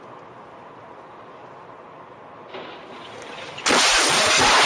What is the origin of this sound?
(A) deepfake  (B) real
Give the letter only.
B